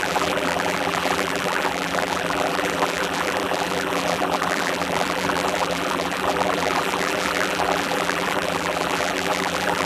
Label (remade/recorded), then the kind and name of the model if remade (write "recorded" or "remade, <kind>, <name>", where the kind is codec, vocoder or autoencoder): remade, vocoder, BigVGAN v2